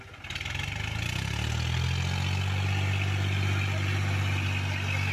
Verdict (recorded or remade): recorded